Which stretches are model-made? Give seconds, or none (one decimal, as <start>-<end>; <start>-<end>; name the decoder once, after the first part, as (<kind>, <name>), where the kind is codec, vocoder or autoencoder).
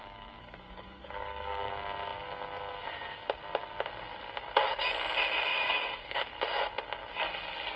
0.0-1.7 (codec, DAC); 5.5-6.2